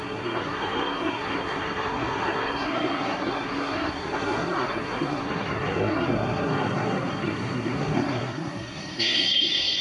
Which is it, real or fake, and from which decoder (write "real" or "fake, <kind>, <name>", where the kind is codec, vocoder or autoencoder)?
fake, codec, SNAC